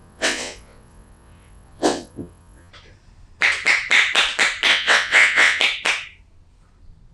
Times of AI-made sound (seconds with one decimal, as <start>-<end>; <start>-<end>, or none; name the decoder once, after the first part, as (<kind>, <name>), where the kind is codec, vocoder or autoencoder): 0.0-2.7 (vocoder, WaveNeXt); 4.7-5.6